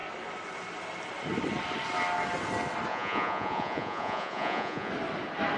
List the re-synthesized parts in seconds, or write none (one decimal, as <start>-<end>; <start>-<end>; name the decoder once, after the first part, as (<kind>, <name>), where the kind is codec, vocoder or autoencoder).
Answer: 2.9-4.9 (vocoder, Vocos)